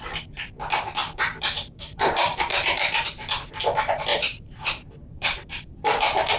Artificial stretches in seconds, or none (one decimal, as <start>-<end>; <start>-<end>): 1.0-3.4; 4.1-6.4